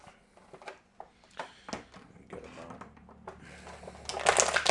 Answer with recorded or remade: recorded